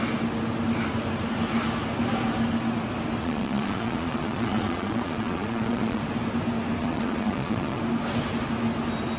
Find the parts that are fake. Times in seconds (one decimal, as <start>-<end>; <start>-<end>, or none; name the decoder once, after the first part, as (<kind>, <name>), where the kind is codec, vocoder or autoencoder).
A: 3.2-6.0 (vocoder, Vocos); 6.8-7.8

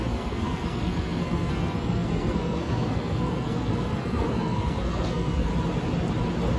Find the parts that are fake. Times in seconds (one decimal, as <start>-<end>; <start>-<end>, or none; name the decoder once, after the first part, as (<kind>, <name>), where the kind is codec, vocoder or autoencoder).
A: 0.0-5.5 (codec, SNAC)

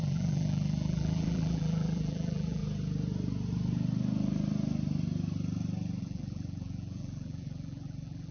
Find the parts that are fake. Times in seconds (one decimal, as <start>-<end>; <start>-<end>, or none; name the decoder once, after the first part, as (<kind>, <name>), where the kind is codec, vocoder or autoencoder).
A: 0.0-2.6 (vocoder, BigVGAN v2); 6.0-8.3

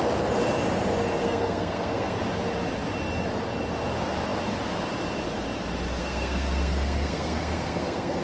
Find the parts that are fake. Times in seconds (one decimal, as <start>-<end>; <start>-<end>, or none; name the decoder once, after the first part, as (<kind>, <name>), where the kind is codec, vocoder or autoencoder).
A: 1.2-2.2 (codec, SNAC); 6.0-8.2

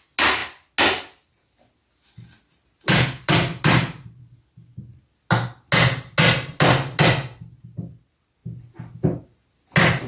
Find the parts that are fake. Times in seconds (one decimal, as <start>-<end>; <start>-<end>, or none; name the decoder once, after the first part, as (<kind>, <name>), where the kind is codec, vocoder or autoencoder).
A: none

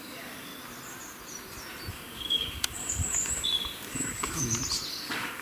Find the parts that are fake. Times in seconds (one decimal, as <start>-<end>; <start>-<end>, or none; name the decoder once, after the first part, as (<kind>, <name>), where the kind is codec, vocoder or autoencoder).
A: 0.0-0.5 (codec, DAC); 1.9-4.4; 4.9-5.4